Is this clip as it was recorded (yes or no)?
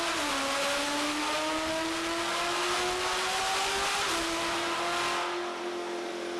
yes